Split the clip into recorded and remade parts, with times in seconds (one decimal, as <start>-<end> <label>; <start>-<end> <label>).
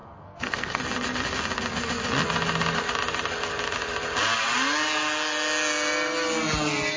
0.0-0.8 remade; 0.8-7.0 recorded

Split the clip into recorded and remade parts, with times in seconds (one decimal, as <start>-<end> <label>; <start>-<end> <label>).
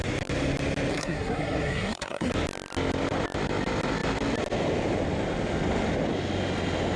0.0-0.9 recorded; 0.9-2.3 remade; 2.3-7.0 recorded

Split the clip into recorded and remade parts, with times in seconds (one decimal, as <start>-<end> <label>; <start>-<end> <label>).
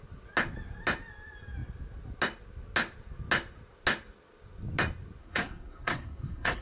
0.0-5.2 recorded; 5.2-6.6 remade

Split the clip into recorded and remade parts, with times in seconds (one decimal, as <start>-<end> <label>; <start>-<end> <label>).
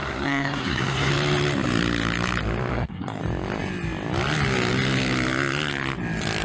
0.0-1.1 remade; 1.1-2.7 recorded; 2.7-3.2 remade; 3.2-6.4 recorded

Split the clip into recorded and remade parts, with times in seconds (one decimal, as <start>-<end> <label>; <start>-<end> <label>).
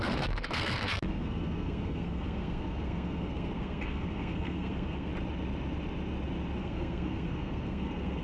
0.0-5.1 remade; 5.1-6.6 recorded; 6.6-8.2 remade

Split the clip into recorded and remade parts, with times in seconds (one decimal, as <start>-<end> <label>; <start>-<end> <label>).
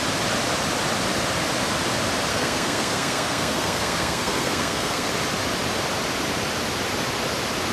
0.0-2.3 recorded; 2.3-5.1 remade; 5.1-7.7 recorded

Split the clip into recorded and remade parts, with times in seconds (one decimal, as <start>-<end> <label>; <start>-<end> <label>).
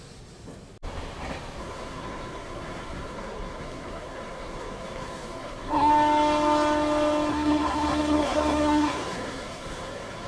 0.0-1.6 recorded; 1.6-5.9 remade; 5.9-7.3 recorded; 7.3-10.3 remade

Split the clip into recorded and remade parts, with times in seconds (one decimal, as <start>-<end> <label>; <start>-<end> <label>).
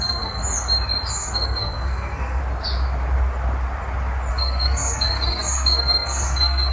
0.0-0.4 remade; 0.4-1.1 recorded; 1.1-2.4 remade; 2.4-4.3 recorded; 4.3-6.7 remade